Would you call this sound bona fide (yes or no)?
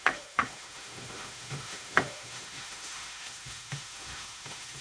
no